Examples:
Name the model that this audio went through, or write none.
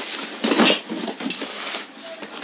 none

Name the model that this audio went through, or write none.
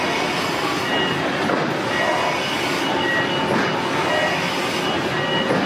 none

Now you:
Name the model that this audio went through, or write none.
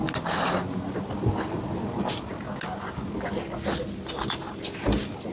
none